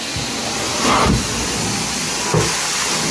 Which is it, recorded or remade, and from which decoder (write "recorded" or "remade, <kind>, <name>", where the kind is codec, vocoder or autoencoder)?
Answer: recorded